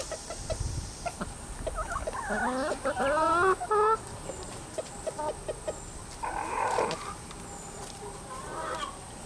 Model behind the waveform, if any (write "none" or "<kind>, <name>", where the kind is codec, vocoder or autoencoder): none